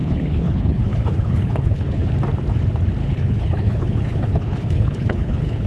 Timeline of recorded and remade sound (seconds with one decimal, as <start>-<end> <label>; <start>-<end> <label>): 0.0-2.1 remade; 2.1-3.0 recorded; 3.0-5.7 remade